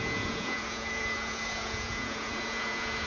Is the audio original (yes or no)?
no